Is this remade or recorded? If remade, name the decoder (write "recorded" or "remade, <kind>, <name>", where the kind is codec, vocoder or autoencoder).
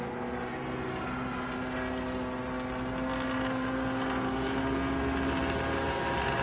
recorded